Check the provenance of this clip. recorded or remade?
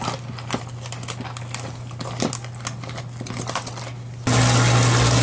recorded